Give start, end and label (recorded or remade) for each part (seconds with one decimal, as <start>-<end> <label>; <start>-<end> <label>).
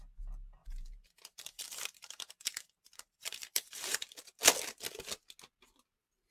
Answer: 0.0-0.6 recorded; 0.6-4.4 remade; 4.4-6.3 recorded